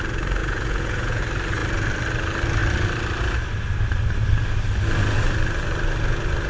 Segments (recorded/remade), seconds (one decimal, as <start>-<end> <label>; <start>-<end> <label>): 0.0-0.4 recorded; 0.4-1.2 remade; 1.2-6.5 recorded